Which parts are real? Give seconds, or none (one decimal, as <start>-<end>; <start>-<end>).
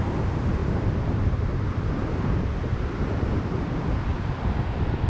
none